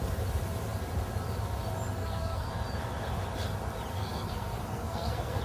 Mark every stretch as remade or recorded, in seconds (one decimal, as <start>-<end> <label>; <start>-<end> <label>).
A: 0.0-2.0 recorded; 2.0-2.5 remade; 2.5-3.9 recorded; 3.9-5.4 remade